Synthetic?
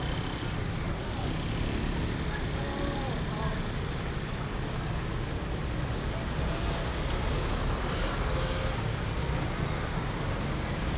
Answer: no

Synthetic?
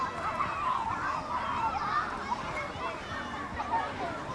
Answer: no